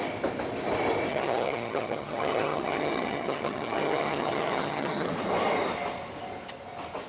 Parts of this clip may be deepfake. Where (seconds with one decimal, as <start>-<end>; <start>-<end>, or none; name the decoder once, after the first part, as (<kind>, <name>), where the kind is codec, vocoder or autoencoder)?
1.1-5.1 (vocoder, HiFi-GAN)